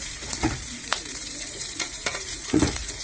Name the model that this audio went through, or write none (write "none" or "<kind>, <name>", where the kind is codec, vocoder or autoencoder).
vocoder, Vocos